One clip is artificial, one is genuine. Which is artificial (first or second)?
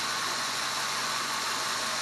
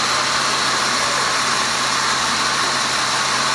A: first